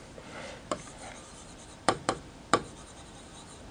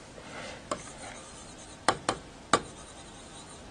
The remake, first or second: first